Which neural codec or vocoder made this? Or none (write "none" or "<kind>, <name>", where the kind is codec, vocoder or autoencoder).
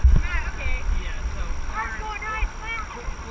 none